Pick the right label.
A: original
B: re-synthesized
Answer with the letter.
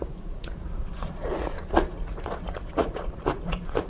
B